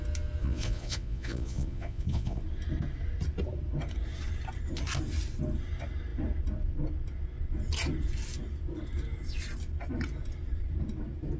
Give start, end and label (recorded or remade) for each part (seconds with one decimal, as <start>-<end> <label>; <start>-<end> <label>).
0.0-0.4 recorded; 0.4-2.4 remade; 2.4-11.4 recorded